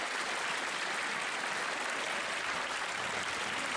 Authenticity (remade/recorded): recorded